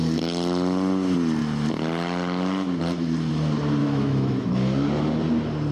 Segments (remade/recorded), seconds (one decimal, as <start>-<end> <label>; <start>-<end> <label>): 0.0-3.8 recorded; 3.8-4.5 remade; 4.5-5.7 recorded